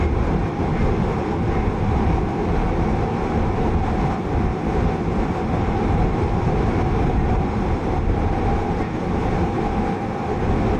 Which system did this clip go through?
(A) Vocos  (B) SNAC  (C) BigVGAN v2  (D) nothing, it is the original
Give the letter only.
C